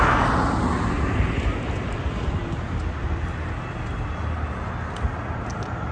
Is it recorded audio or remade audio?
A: recorded